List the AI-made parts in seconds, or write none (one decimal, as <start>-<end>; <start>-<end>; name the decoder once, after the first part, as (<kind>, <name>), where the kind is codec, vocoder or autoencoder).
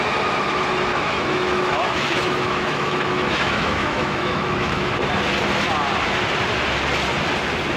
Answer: 0.9-4.9 (autoencoder, DAC-VAE)